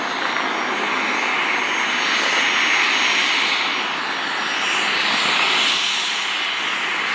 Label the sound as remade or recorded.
recorded